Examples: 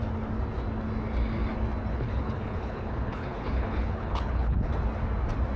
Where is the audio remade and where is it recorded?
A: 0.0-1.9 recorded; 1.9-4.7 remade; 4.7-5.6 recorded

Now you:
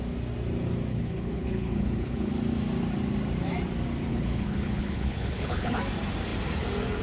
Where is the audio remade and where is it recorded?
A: 0.0-0.9 recorded; 0.9-2.3 remade; 2.3-4.1 recorded; 4.1-5.8 remade; 5.8-7.0 recorded

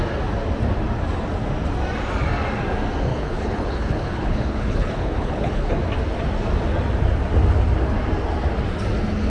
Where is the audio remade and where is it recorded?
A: 0.0-3.1 recorded; 3.1-5.8 remade; 5.8-9.3 recorded